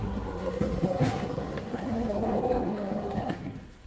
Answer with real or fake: fake